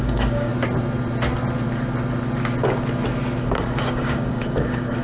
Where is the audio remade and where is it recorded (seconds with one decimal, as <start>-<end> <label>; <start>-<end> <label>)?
0.0-0.5 remade; 0.5-3.4 recorded; 3.4-5.0 remade